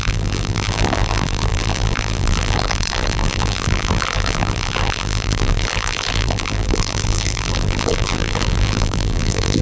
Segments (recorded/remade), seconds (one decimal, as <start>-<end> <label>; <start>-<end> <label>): 0.0-9.6 remade